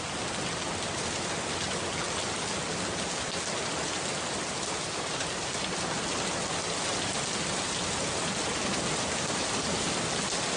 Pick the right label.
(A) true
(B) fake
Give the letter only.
A